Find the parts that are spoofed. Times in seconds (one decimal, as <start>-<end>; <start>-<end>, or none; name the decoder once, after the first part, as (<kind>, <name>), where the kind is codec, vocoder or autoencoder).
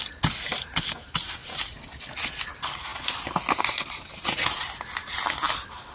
none